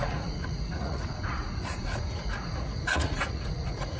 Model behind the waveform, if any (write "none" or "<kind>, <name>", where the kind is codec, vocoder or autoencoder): vocoder, Vocos